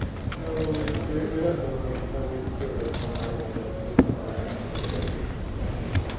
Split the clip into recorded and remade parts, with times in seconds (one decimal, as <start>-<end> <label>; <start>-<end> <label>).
0.0-5.0 recorded; 5.0-5.5 remade; 5.5-6.2 recorded